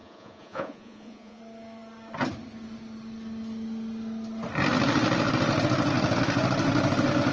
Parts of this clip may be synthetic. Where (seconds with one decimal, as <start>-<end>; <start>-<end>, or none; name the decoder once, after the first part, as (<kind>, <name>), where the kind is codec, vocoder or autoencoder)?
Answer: 0.0-1.4 (vocoder, Vocos)